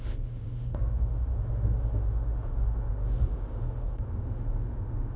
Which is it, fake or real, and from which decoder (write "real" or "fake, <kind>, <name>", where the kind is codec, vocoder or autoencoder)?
fake, autoencoder, DAC-VAE